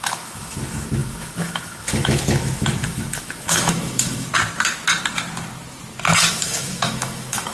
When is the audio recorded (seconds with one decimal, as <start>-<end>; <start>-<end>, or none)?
4.3-6.3